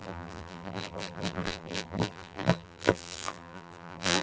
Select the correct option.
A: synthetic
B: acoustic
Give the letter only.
A